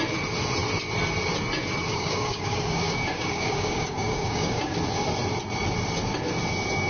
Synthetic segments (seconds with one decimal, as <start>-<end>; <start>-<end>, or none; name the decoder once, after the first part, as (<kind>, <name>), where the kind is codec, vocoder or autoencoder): 1.9-4.7 (codec, DAC)